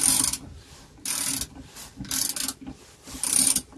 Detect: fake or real real